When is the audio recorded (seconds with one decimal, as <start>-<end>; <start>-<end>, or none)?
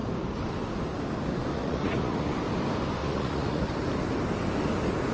0.0-1.5; 2.3-3.0; 3.7-5.1